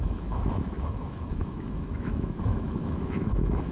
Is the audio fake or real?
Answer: fake